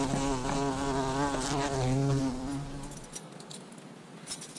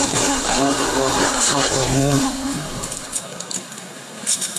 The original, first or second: first